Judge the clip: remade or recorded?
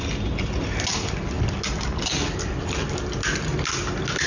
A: recorded